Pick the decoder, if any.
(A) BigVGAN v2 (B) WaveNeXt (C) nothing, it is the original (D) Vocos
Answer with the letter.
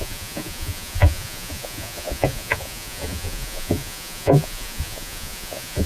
D